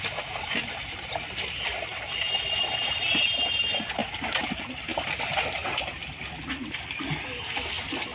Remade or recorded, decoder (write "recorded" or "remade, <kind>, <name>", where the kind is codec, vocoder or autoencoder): recorded